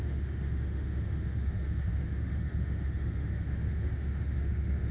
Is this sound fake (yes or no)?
yes